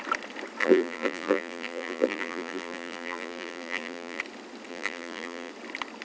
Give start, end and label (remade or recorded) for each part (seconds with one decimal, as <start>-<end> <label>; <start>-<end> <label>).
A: 0.0-0.6 recorded; 0.6-4.2 remade; 4.2-4.7 recorded; 4.7-5.5 remade; 5.5-6.0 recorded